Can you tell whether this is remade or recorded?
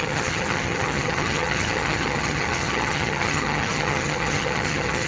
remade